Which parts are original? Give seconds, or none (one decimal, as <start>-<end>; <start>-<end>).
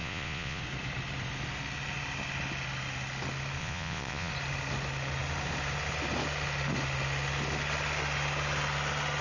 0.6-3.6; 4.3-9.2